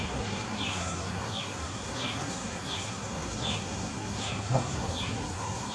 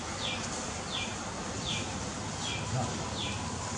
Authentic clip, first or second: second